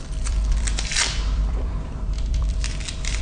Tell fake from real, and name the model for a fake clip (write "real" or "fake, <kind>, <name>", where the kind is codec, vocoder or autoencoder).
fake, vocoder, BigVGAN v2